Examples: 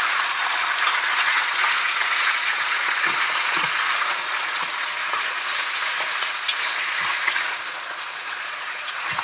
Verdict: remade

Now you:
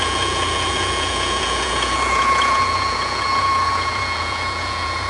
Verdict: remade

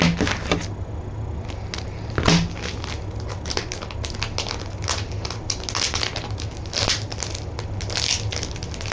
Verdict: recorded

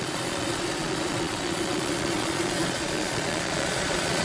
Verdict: remade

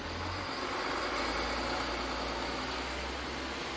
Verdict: recorded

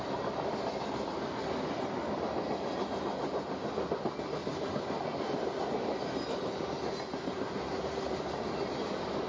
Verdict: recorded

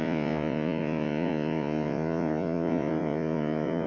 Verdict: remade